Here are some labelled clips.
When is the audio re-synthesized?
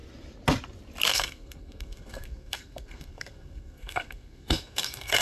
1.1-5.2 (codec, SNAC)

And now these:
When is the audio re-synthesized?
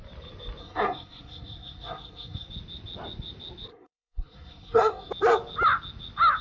0.6-2.5 (codec, SNAC); 3.7-5.1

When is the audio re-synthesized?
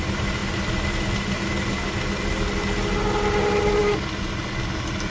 none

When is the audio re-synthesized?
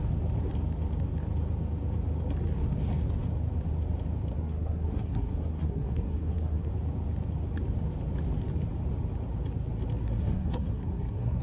4.3-6.7 (codec, SNAC); 10.0-11.4